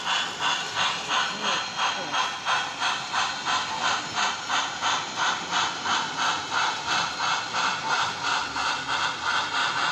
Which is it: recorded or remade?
recorded